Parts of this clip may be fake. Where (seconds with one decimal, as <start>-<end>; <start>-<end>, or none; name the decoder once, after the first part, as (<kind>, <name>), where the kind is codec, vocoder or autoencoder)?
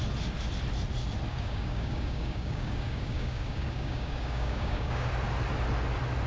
1.3-5.1 (codec, DAC)